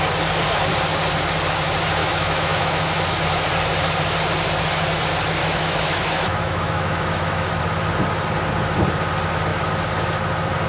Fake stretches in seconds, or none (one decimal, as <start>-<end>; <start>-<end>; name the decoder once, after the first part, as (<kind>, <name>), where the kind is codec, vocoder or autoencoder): 2.0-3.0 (autoencoder, DAC-VAE); 5.4-7.6